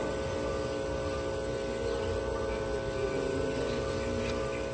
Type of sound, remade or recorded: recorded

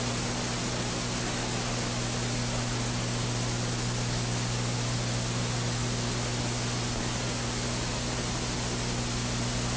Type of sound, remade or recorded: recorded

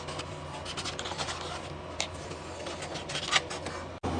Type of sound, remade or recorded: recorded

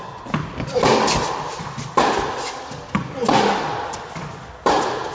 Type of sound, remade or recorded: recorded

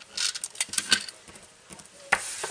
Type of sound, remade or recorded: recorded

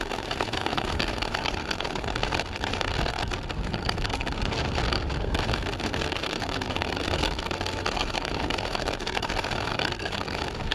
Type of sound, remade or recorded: remade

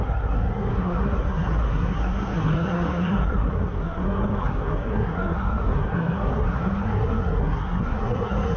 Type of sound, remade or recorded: remade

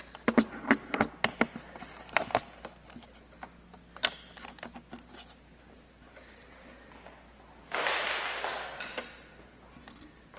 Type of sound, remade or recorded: recorded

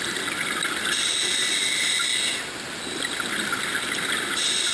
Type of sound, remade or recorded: recorded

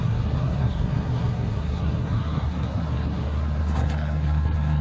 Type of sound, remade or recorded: remade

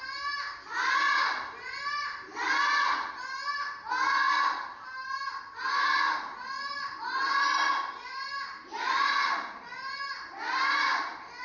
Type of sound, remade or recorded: recorded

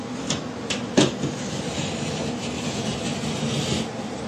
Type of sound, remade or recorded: recorded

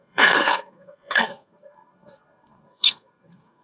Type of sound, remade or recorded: remade